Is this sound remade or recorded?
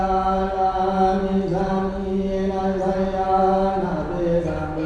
recorded